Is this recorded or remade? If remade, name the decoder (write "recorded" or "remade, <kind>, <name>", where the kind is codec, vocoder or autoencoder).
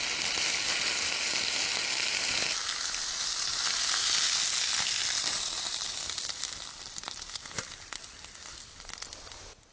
recorded